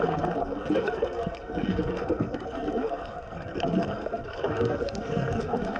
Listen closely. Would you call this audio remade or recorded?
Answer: remade